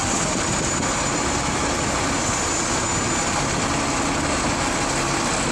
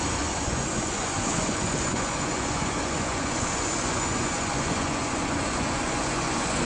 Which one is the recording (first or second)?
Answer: first